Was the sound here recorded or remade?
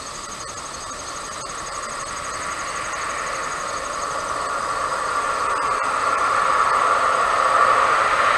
recorded